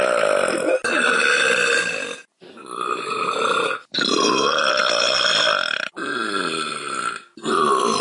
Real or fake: real